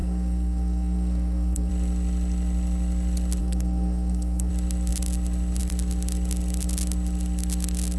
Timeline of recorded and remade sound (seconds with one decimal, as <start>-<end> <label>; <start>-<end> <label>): 0.0-1.7 remade; 1.7-3.4 recorded; 3.4-4.5 remade; 4.5-8.0 recorded